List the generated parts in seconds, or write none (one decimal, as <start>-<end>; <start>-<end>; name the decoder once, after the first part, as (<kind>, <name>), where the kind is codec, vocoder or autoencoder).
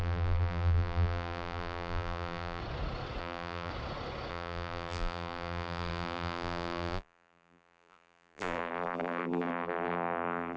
0.0-2.6 (vocoder, BigVGAN v2); 3.2-3.7; 4.3-10.6